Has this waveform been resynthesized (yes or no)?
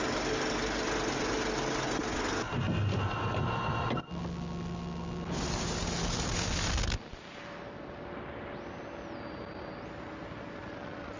no